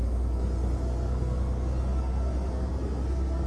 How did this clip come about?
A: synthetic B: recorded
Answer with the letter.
A